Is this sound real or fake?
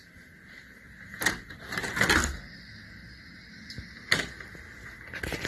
real